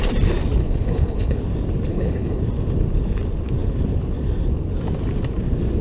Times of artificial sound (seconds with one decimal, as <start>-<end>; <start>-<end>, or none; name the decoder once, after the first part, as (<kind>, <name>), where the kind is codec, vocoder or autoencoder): 0.6-1.4 (codec, HILCodec); 1.9-2.4